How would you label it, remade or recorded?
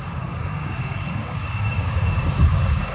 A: remade